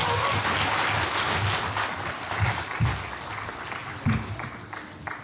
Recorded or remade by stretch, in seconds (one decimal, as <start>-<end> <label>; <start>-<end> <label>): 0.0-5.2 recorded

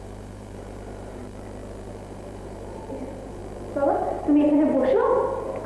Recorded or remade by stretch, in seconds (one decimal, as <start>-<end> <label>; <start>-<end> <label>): 0.0-1.2 remade; 1.2-1.9 recorded; 1.9-3.4 remade; 3.4-3.9 recorded; 3.9-5.7 remade

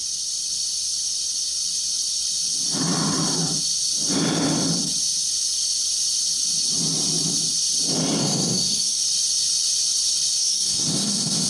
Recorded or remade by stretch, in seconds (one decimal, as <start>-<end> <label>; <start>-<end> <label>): 0.0-8.2 recorded; 8.2-9.0 remade; 9.0-10.4 recorded; 10.4-11.5 remade